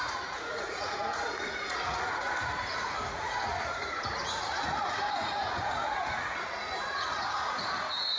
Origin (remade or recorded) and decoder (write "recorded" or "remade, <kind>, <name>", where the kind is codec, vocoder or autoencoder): remade, vocoder, Vocos